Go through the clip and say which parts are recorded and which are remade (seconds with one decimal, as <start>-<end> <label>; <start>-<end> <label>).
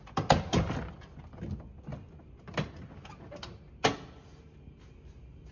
0.0-5.5 recorded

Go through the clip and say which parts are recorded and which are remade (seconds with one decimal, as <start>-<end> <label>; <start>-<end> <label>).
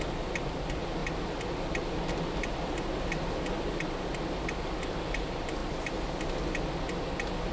0.0-7.5 recorded